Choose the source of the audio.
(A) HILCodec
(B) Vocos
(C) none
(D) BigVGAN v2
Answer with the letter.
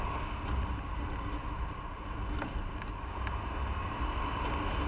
C